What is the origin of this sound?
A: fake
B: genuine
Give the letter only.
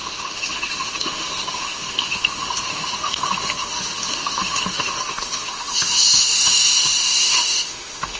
A